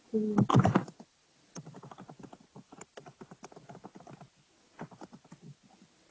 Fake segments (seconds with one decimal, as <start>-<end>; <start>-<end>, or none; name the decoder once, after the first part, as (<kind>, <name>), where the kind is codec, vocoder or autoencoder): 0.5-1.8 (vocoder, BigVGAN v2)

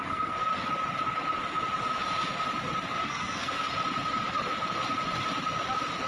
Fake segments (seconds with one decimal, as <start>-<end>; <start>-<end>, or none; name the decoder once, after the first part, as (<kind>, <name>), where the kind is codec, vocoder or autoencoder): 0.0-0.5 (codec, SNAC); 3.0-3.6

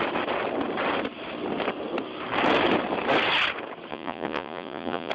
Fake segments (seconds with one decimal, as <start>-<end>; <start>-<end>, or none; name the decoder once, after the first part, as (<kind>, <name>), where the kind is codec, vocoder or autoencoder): 3.9-5.1 (vocoder, Vocos)

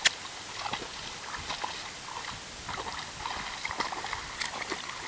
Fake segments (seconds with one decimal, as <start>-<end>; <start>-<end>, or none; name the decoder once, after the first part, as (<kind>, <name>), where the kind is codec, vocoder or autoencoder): none

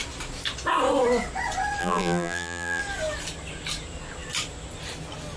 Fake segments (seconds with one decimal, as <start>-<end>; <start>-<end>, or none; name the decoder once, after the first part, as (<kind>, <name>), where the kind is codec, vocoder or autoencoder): 1.8-2.8 (vocoder, BigVGAN v2)

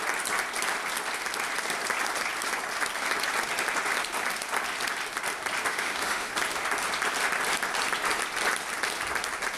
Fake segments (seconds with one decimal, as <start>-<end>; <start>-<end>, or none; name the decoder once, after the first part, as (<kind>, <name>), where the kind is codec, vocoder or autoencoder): 5.7-6.3 (autoencoder, DAC-VAE)

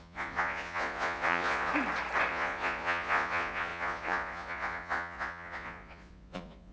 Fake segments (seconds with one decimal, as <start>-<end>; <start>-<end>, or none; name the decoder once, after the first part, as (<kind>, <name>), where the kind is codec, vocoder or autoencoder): 0.0-1.7 (vocoder, Vocos); 2.3-6.7

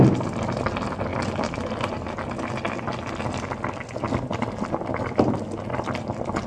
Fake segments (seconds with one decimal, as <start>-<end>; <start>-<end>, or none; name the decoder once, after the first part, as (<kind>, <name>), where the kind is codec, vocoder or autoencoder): none